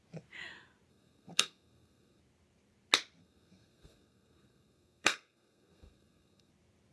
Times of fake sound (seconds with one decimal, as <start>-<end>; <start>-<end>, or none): 0.9-2.2; 3.2-6.5